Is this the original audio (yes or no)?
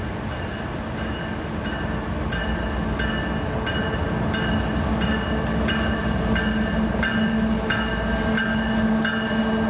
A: yes